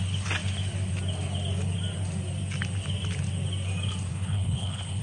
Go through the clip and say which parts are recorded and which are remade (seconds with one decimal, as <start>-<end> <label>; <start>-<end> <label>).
0.0-4.1 recorded; 4.1-5.0 remade